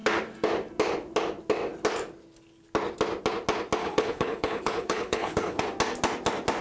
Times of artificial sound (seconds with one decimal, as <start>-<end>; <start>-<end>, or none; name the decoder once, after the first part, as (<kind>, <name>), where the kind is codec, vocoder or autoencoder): 3.8-5.6 (codec, HILCodec)